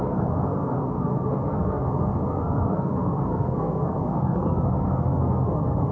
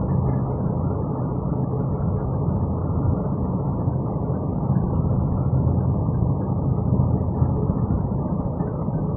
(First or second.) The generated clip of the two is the first